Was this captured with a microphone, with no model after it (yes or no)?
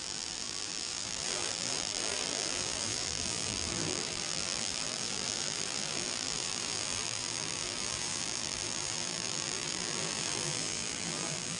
no